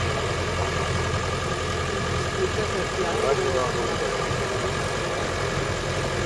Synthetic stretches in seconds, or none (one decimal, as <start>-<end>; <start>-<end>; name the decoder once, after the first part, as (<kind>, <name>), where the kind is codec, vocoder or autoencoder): none